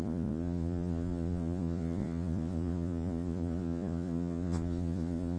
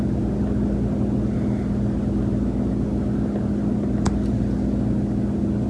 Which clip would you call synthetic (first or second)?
first